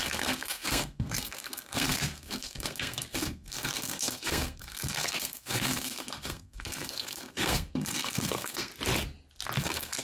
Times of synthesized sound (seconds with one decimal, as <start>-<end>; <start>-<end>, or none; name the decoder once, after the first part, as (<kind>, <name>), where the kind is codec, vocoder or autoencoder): 0.0-8.7 (codec, SNAC); 9.6-10.0